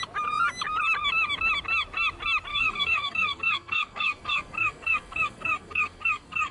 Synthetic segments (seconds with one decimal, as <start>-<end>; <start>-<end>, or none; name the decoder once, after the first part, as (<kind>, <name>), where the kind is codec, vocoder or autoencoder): 2.5-6.5 (codec, SNAC)